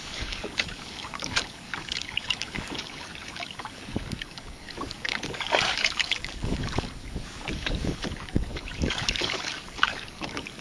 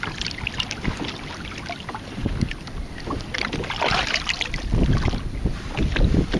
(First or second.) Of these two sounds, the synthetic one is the first